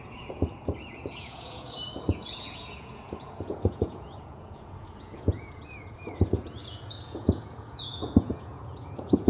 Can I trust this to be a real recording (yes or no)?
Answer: no